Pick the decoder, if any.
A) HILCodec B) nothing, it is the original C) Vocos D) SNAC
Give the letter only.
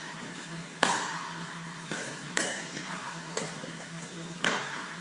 D